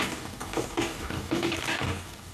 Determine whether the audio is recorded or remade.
remade